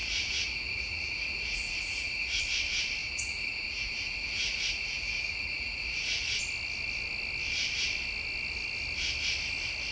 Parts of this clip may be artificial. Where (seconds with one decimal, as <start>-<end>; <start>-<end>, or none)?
0.0-2.4; 3.0-6.4

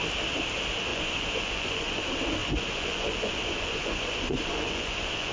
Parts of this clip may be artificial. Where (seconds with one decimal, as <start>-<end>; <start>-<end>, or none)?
0.9-2.0; 2.4-5.3

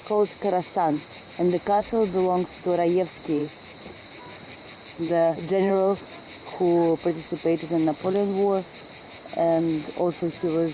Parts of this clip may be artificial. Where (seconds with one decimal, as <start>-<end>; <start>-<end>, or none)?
0.0-1.8; 3.4-6.0

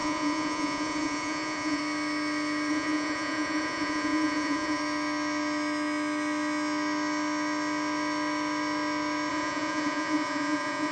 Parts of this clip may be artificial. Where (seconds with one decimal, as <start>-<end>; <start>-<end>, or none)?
0.0-1.8; 2.7-4.8; 9.3-10.9